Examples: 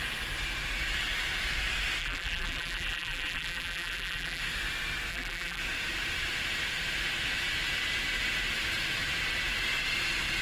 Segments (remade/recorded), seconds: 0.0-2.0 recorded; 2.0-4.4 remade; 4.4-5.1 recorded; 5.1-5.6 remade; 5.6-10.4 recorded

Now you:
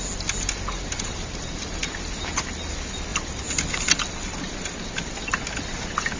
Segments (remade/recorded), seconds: 0.0-6.2 recorded